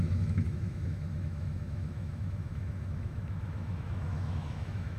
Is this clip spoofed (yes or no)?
yes